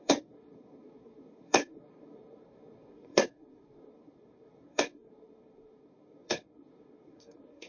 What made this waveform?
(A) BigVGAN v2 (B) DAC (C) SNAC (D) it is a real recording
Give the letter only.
C